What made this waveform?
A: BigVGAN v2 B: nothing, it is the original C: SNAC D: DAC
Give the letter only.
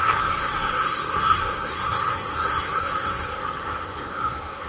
C